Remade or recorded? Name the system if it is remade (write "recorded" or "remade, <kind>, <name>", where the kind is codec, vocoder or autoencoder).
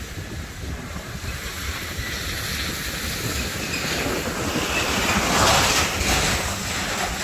recorded